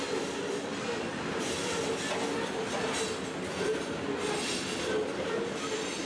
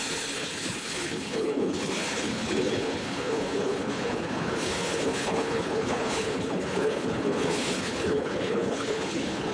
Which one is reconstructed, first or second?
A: second